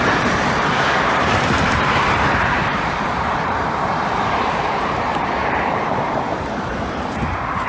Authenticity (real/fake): fake